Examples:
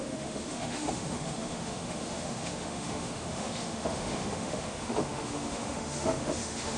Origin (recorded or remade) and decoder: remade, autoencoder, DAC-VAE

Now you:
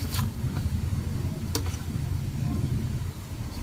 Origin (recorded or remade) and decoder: remade, codec, DAC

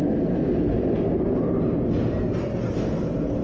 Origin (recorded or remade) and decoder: recorded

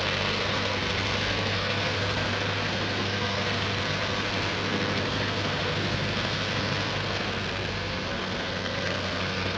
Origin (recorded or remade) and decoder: remade, codec, SNAC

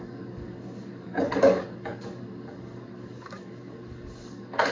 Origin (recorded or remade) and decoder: remade, codec, DAC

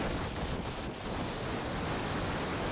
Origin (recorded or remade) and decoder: recorded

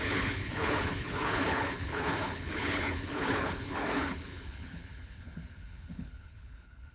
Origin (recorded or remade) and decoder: remade, codec, HILCodec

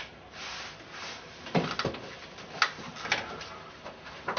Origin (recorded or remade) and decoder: recorded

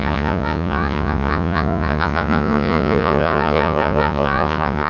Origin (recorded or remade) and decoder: remade, vocoder, Vocos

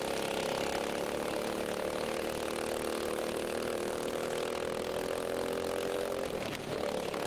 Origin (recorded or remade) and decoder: recorded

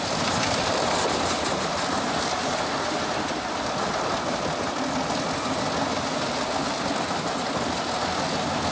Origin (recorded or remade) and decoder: recorded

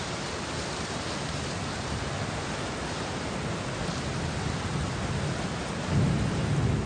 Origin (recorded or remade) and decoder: recorded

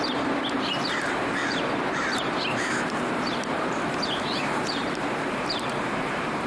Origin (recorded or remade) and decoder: remade, vocoder, BigVGAN v2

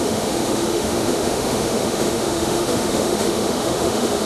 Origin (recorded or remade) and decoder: remade, autoencoder, DAC-VAE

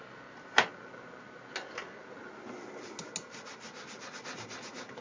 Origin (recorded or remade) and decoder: recorded